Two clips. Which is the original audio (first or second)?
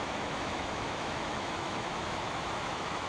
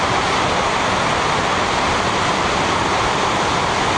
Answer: second